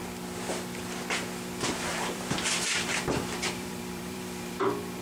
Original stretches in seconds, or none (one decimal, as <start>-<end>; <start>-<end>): 0.0-1.9; 4.6-5.0